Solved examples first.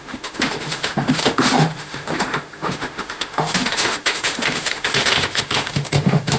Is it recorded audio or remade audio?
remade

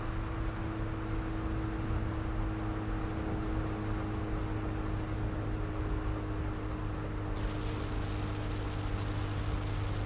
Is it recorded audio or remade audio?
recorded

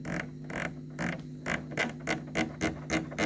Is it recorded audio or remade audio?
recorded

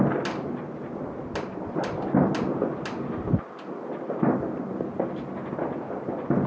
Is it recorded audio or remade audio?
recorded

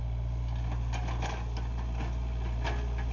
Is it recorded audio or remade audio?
recorded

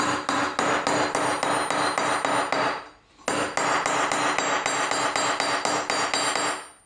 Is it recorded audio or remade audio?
recorded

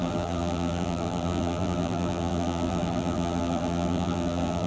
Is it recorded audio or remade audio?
remade